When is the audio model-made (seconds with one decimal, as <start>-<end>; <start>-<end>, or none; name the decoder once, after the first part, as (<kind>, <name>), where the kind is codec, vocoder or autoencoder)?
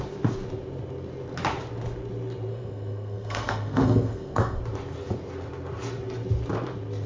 2.5-4.6 (codec, SNAC)